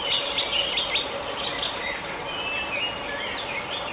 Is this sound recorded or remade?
recorded